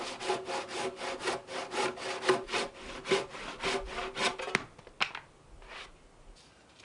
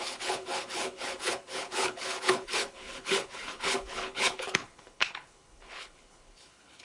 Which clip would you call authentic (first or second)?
first